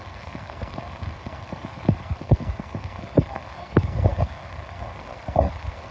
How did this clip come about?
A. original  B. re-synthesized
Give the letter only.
B